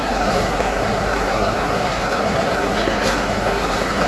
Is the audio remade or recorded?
remade